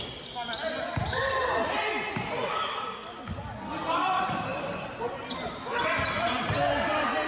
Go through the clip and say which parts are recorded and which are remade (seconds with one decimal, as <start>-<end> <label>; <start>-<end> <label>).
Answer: 0.0-4.5 recorded; 4.5-6.4 remade; 6.4-7.3 recorded